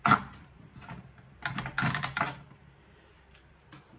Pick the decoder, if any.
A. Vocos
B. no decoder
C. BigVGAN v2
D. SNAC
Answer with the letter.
C